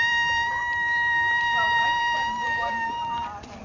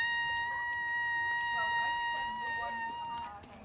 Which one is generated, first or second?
first